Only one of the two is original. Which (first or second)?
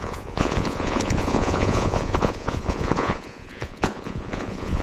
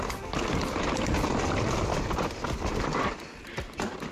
second